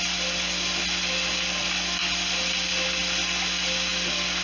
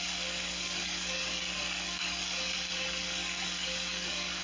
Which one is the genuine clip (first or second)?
first